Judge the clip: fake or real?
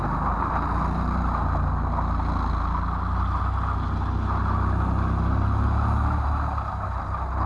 real